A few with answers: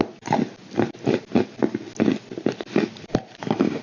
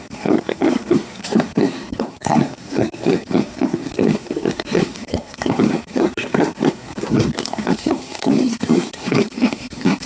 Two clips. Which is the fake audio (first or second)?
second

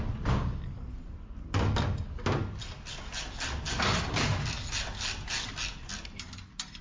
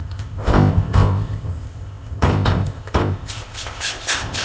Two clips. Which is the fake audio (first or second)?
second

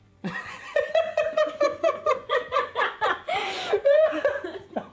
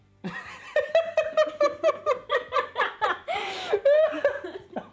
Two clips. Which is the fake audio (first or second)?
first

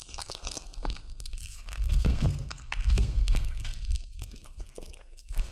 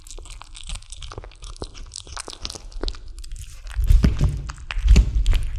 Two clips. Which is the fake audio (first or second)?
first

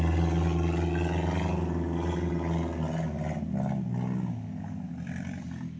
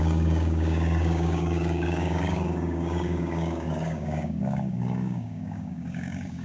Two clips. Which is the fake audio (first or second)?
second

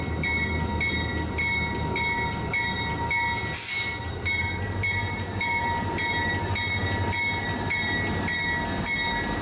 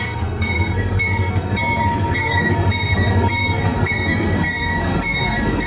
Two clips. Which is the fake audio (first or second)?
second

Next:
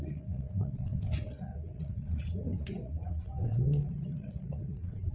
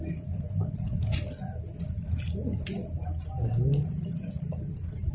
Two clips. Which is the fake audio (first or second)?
first